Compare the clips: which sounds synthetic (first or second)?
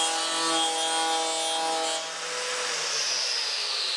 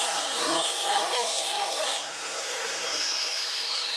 second